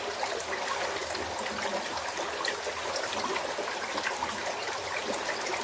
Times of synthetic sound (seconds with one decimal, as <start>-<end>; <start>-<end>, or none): 4.4-5.0